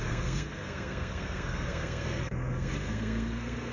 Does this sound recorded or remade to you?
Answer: remade